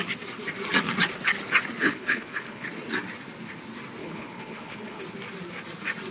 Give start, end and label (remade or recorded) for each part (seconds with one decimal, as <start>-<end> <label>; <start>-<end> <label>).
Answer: 0.0-1.8 recorded; 1.8-2.7 remade; 2.7-4.0 recorded; 4.0-5.0 remade; 5.0-6.1 recorded